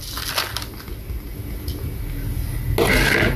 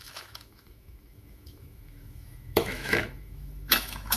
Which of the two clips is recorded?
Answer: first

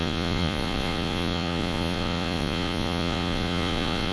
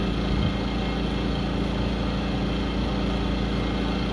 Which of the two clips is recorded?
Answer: second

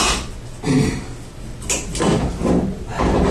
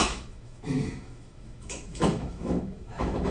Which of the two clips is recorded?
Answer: first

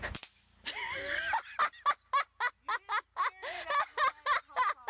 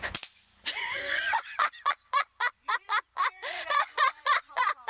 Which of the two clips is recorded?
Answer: first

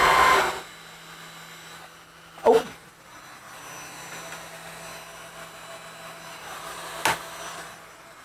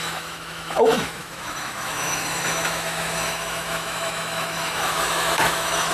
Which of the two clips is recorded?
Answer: first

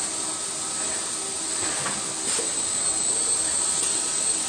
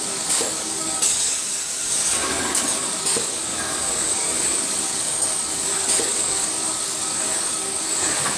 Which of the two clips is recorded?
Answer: first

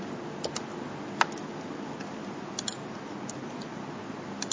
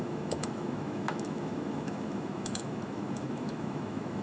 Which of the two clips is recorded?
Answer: first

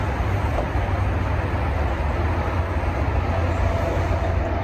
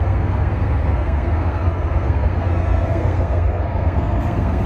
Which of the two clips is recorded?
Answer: first